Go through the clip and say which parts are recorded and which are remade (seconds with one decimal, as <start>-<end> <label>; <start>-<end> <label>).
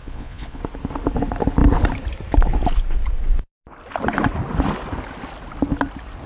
0.0-0.6 remade; 0.6-6.3 recorded